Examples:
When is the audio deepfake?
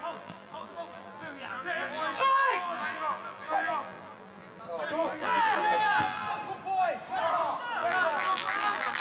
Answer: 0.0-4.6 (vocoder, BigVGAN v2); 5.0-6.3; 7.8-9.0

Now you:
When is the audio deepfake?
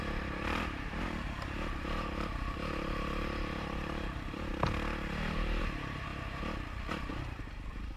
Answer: 0.0-4.5 (vocoder, BigVGAN v2); 5.6-6.1; 6.9-8.0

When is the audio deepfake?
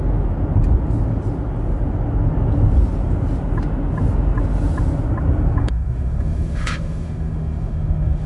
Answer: 5.6-8.3 (autoencoder, DAC-VAE)